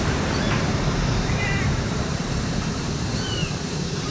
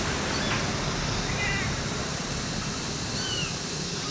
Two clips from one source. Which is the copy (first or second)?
first